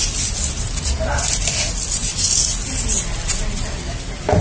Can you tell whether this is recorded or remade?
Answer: recorded